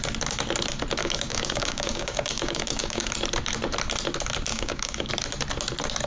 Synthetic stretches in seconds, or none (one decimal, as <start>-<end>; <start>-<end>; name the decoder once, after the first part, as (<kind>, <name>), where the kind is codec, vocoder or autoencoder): 1.0-3.1 (codec, DAC); 4.5-5.1